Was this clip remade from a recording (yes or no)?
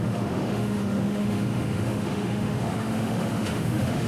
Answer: yes